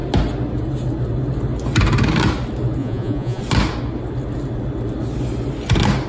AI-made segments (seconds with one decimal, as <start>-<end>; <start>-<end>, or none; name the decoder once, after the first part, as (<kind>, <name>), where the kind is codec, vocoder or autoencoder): 2.8-3.4 (vocoder, Vocos)